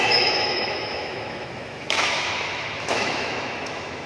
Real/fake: fake